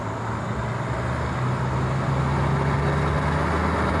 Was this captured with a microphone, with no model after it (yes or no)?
yes